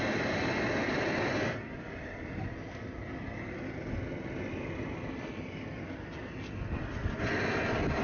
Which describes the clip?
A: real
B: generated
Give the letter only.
A